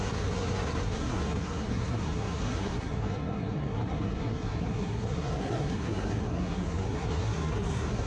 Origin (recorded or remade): remade